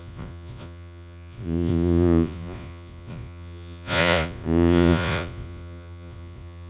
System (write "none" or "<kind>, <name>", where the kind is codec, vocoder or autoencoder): vocoder, Vocos